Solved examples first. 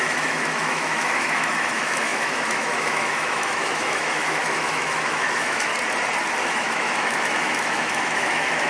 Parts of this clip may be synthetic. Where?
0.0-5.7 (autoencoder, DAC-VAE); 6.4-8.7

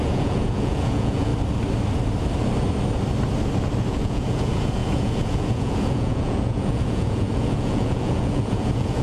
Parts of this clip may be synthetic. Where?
0.0-1.3 (vocoder, Vocos); 3.9-9.0